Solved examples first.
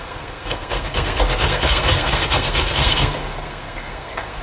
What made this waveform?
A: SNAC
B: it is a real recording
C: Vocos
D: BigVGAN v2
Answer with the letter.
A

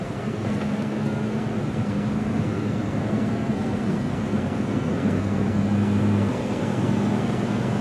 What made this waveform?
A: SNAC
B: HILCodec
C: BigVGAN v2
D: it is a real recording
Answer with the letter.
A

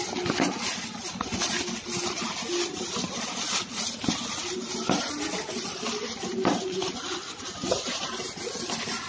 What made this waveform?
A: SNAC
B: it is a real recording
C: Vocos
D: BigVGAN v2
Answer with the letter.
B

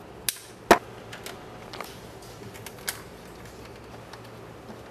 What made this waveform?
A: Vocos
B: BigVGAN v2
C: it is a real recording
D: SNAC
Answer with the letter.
C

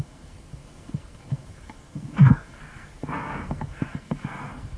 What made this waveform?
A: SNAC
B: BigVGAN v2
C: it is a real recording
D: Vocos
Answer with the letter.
A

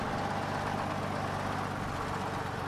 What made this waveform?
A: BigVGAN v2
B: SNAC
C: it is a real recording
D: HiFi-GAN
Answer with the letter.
C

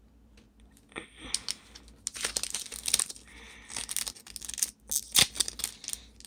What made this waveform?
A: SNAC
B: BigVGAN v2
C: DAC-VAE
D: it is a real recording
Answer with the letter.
D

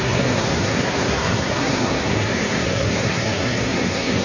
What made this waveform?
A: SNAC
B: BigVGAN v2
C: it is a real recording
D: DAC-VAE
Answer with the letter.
A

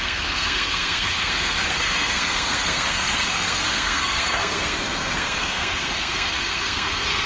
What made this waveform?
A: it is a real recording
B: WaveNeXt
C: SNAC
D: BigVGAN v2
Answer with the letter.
C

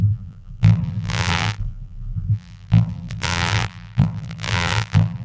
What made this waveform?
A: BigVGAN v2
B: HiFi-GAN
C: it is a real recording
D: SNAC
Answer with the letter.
A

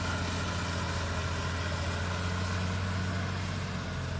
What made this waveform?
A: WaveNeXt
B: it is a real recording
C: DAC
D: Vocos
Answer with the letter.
B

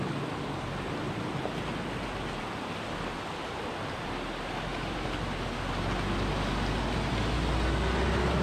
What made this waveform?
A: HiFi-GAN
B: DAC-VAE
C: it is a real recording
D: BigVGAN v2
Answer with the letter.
C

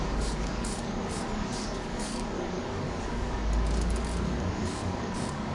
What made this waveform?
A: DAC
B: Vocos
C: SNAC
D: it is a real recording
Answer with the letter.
A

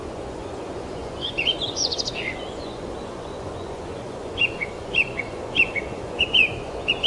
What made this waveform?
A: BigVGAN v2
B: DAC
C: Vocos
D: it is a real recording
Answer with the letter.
C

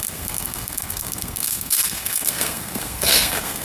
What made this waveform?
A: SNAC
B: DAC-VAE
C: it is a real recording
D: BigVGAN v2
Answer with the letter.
A